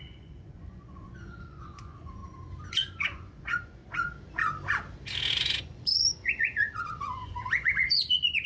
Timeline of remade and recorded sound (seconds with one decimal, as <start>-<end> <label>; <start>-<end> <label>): 0.0-2.2 remade; 2.2-2.7 recorded; 2.7-3.8 remade; 3.8-5.6 recorded; 5.6-8.5 remade